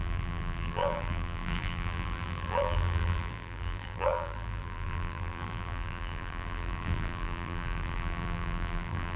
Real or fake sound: fake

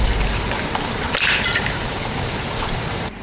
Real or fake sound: fake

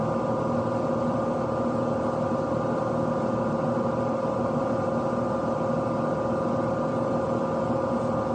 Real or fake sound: real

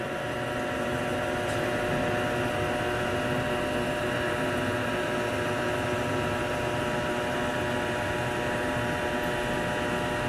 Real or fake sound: real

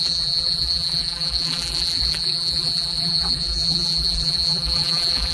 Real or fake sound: fake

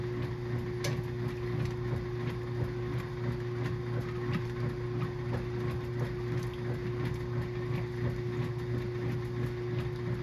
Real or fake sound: real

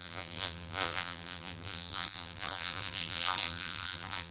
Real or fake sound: fake